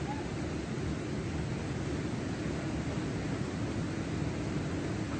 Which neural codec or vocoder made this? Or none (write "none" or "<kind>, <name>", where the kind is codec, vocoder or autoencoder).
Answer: none